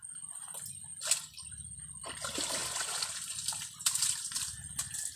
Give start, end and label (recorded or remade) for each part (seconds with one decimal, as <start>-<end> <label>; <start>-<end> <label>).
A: 0.0-5.2 recorded